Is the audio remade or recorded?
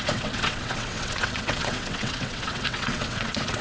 remade